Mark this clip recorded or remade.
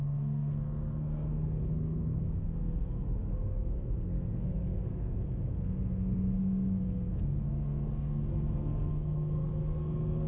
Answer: remade